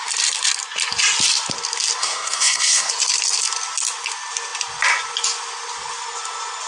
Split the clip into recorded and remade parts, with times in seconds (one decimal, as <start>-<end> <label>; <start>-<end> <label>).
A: 0.0-2.0 recorded; 2.0-2.9 remade; 2.9-6.7 recorded